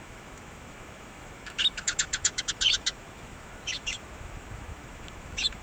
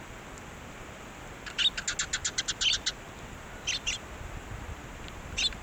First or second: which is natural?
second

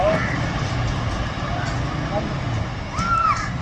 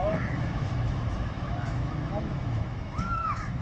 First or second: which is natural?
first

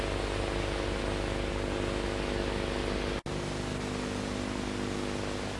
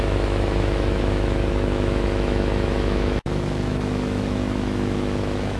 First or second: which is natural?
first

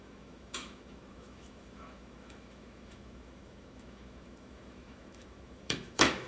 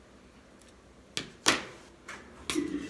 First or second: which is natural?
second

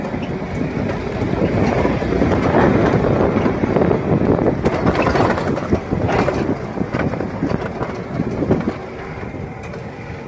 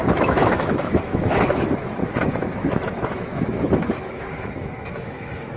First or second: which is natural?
first